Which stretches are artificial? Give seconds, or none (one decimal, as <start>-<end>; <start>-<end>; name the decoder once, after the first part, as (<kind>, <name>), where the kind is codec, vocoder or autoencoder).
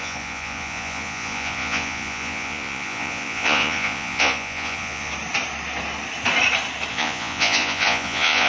0.0-5.1 (vocoder, Vocos); 6.9-8.5